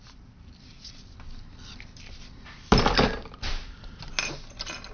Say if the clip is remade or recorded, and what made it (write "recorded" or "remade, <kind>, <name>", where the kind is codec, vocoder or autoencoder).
recorded